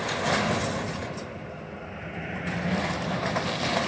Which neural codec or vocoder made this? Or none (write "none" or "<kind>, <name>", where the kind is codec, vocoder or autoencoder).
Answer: none